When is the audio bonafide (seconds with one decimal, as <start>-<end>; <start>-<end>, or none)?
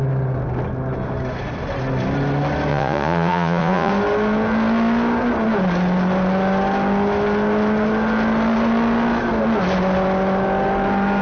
0.0-2.7; 3.9-11.2